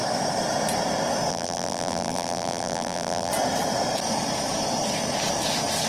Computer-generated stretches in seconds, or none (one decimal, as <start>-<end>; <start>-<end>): 1.3-3.3